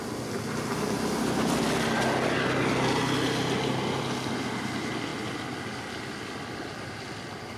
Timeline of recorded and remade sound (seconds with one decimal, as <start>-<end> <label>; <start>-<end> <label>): 0.0-7.6 recorded